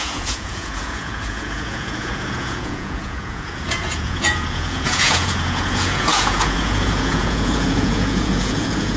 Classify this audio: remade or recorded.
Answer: remade